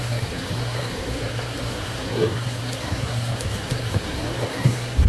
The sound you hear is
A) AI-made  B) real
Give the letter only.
A